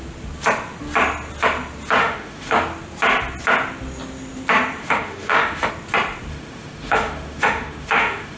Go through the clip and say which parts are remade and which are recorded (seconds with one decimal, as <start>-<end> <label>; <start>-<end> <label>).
0.0-2.0 recorded; 2.0-2.6 remade; 2.6-4.8 recorded; 4.8-5.7 remade; 5.7-6.3 recorded; 6.3-8.4 remade